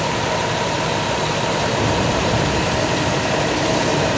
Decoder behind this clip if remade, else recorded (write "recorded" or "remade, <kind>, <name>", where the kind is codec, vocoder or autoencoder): remade, vocoder, BigVGAN v2